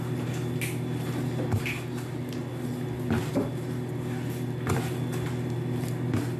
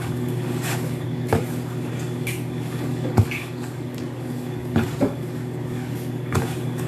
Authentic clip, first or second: first